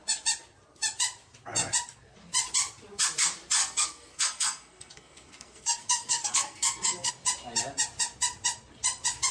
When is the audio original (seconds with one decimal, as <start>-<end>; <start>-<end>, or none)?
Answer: 0.0-3.6; 7.1-9.3